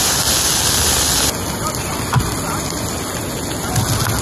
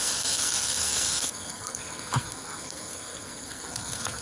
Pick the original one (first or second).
first